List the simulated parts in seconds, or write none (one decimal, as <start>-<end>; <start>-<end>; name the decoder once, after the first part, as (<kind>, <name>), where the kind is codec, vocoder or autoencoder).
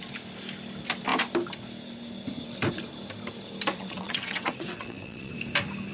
3.7-5.3 (vocoder, WaveNeXt)